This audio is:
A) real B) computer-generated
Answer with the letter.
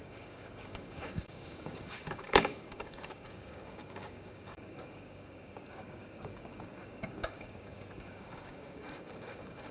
B